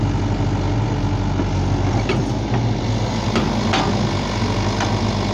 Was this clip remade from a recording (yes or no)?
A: no